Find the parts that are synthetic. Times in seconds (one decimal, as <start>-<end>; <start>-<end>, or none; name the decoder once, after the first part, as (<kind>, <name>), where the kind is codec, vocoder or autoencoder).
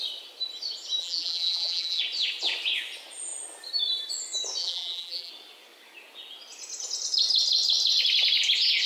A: 1.0-2.0 (vocoder, BigVGAN v2); 4.6-5.3